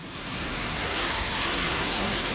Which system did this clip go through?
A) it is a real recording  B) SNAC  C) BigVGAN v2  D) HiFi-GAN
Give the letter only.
B